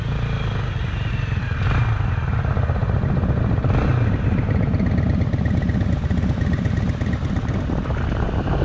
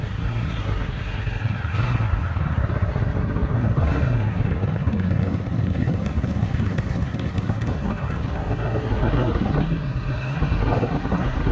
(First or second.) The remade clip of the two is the second